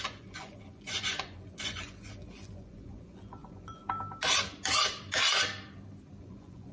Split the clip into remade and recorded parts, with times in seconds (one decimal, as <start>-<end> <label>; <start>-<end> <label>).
0.0-3.8 remade; 3.8-6.2 recorded; 6.2-6.7 remade